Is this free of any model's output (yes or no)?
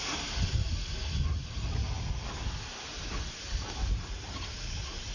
yes